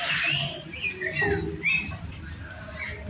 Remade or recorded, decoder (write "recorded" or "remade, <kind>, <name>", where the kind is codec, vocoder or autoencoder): recorded